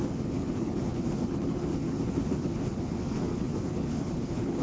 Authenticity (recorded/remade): remade